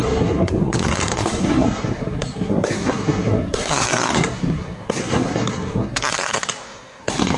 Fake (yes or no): yes